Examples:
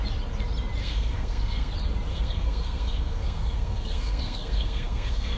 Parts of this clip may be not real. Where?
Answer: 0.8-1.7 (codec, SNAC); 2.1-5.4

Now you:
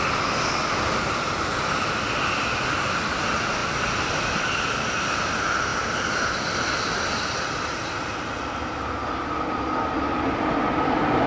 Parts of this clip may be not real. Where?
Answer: none